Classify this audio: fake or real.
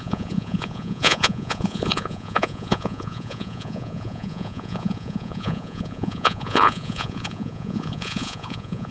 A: fake